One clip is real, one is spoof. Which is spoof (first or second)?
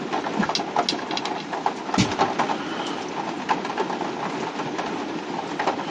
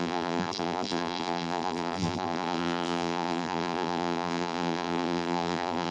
second